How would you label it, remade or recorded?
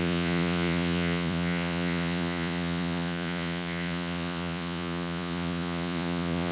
remade